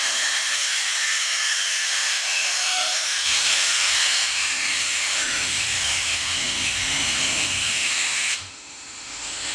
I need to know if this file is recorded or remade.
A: remade